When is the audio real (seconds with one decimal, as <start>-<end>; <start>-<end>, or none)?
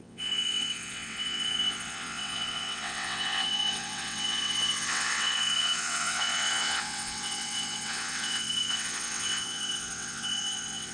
none